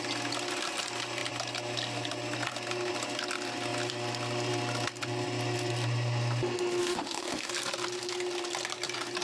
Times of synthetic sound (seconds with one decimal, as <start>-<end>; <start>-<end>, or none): 6.8-7.5